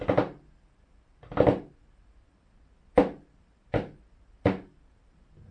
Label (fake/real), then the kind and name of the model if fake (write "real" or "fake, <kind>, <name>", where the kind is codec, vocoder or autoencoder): real